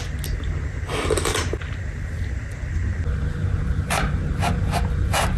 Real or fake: real